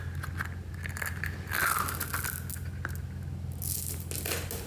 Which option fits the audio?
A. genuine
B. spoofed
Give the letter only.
A